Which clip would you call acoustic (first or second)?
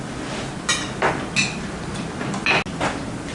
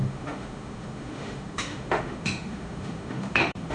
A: first